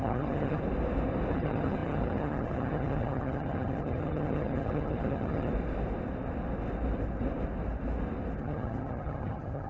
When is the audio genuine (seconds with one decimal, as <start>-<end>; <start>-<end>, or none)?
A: 0.6-1.3; 5.5-8.4